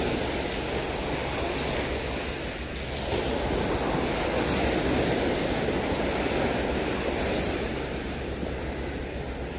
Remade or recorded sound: recorded